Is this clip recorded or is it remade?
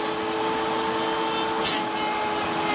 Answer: recorded